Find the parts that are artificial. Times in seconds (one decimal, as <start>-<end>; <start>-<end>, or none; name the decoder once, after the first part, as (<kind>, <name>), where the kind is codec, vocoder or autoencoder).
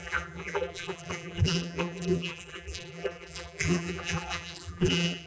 0.0-5.3 (vocoder, BigVGAN v2)